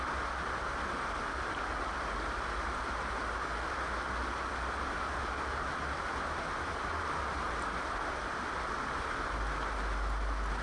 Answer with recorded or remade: recorded